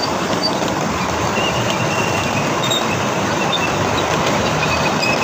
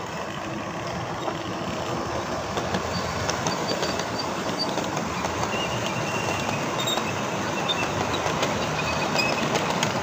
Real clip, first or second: second